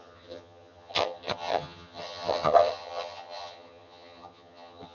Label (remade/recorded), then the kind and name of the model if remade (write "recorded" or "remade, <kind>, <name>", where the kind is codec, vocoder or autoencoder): remade, vocoder, HiFi-GAN